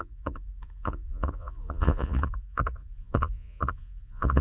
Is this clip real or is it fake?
fake